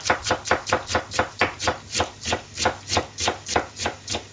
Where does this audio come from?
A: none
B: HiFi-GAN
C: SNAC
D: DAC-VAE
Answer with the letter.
A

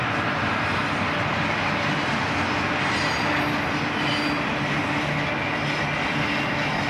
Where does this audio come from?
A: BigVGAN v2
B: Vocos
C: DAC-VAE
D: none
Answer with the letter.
D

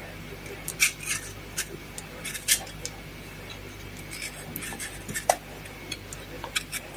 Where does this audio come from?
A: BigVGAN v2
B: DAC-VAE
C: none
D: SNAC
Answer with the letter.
C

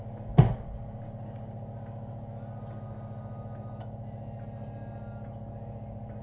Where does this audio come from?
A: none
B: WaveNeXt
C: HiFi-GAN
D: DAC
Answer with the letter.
A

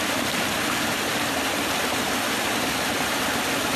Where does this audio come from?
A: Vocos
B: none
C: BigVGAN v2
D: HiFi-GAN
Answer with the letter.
B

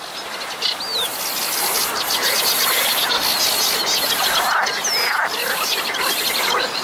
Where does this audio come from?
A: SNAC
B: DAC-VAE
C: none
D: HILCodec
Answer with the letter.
C